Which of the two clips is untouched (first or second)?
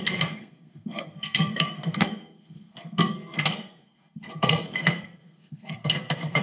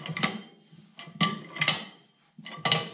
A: second